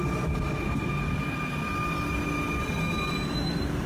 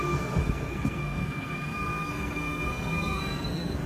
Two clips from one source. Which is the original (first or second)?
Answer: first